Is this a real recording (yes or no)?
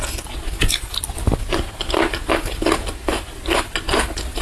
yes